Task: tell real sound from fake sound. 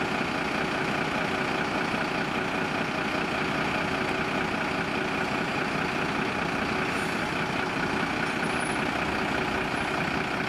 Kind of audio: real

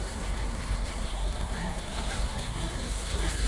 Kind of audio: fake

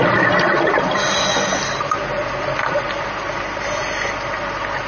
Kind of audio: real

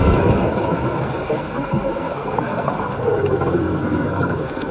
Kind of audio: fake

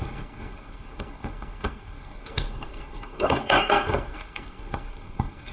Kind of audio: fake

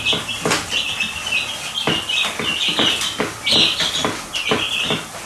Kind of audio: real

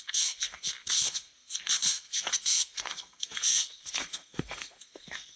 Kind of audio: fake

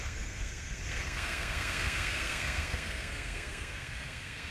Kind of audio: fake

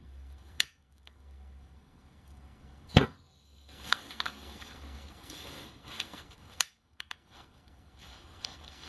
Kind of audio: fake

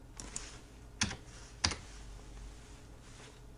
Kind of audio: real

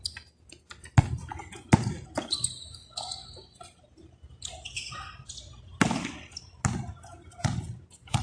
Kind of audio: real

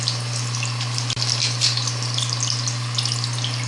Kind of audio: real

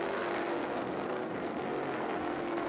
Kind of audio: fake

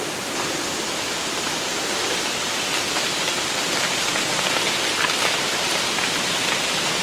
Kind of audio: real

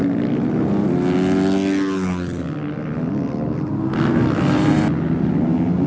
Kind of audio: real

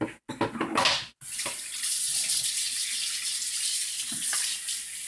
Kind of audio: real